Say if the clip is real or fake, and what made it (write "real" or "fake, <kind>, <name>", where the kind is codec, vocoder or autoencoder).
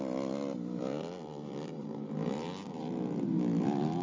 real